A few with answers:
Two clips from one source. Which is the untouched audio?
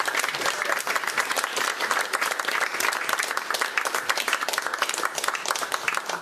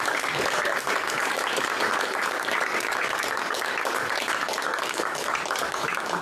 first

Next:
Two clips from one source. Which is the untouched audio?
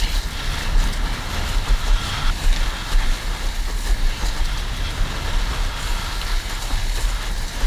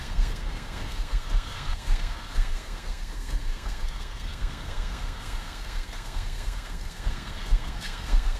first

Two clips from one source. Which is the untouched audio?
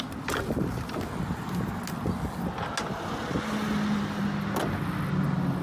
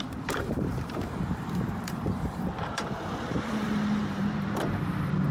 first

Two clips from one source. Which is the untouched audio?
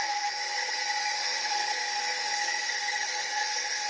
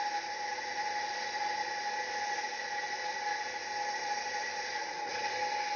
second